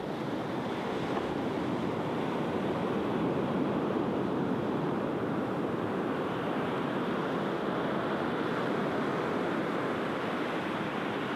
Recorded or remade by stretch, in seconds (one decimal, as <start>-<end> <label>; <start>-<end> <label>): 0.0-2.8 recorded; 2.8-5.7 remade; 5.7-11.4 recorded